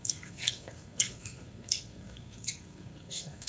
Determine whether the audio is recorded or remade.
remade